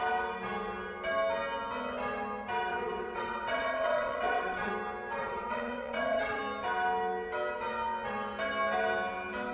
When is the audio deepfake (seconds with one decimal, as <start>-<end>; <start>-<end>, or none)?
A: 2.7-4.7; 5.2-6.4